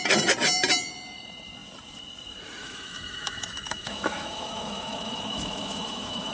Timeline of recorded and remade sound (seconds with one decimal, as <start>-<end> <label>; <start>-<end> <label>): 0.0-2.6 recorded; 2.6-6.3 remade